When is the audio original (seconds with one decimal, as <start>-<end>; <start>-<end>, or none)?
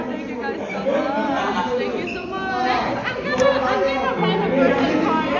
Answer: 0.0-5.4